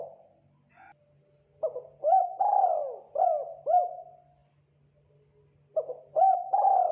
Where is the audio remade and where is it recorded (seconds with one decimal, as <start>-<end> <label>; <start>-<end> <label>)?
0.0-6.9 recorded